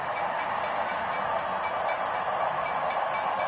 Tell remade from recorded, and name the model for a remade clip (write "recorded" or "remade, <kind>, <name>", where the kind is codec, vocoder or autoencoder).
recorded